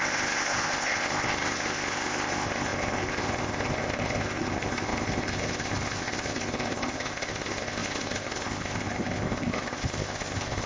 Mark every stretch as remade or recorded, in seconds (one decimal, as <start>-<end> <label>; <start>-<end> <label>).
0.0-10.7 remade